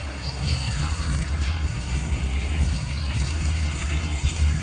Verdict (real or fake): fake